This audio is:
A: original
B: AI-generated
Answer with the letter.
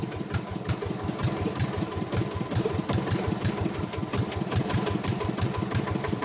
A